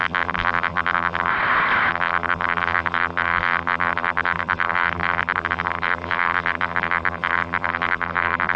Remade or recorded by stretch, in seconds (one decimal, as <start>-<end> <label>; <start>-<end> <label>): 0.0-1.3 remade; 1.3-1.9 recorded; 1.9-8.6 remade